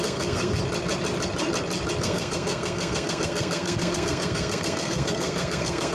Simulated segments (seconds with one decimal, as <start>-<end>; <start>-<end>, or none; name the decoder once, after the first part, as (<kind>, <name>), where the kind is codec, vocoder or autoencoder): 0.0-0.6 (codec, SNAC); 2.0-5.9